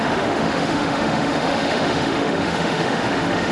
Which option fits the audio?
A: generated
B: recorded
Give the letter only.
A